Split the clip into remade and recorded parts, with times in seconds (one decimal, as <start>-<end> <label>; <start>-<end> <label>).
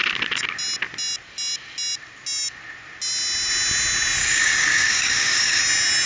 0.0-4.2 recorded; 4.2-5.6 remade; 5.6-6.1 recorded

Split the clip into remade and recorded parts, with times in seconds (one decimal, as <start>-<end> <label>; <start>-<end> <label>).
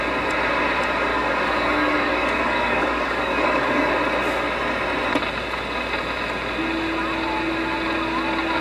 0.0-1.1 recorded; 1.1-3.9 remade; 3.9-8.6 recorded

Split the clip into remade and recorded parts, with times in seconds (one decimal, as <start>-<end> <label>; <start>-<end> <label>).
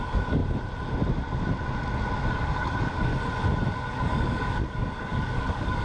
0.0-0.4 remade; 0.4-2.3 recorded; 2.3-3.1 remade; 3.1-3.7 recorded; 3.7-5.8 remade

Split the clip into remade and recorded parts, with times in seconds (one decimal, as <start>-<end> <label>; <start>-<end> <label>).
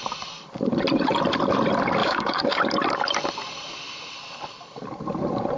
0.0-2.0 recorded; 2.0-2.6 remade; 2.6-5.6 recorded